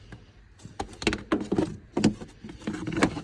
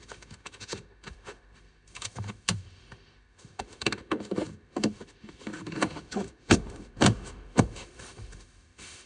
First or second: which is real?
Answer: first